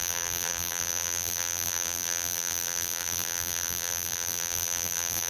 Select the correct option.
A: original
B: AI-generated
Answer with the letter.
B